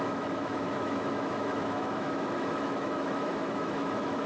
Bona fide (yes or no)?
no